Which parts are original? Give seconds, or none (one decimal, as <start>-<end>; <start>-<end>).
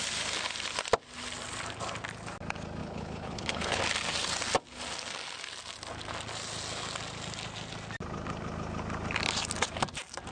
0.0-2.8; 3.8-10.3